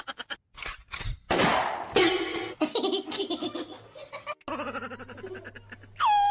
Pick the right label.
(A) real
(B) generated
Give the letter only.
A